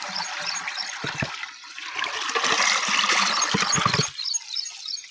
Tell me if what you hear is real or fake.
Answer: real